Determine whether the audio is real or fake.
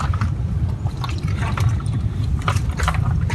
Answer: fake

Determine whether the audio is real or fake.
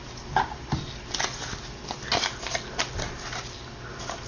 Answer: real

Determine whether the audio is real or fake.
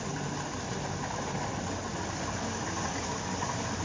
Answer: fake